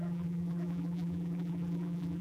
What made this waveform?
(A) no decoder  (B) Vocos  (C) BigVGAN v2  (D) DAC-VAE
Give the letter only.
C